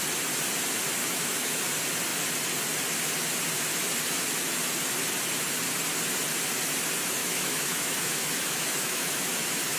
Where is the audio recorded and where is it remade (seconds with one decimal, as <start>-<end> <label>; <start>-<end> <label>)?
0.0-1.0 recorded; 1.0-1.6 remade; 1.6-7.2 recorded; 7.2-9.8 remade